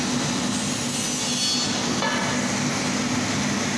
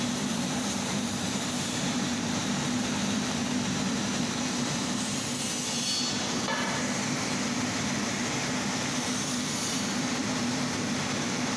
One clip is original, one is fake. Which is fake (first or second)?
second